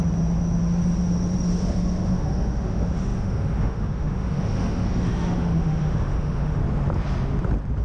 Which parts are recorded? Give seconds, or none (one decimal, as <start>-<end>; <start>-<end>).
0.0-1.5; 6.6-7.8